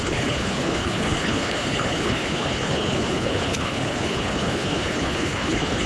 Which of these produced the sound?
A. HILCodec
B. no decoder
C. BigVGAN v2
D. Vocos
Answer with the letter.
A